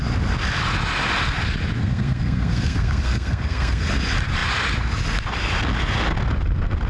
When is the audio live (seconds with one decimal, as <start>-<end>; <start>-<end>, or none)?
0.0-1.8; 3.9-6.9